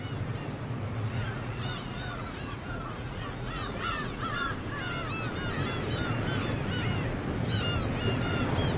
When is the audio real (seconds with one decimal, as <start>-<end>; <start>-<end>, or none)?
0.0-1.1; 4.5-8.8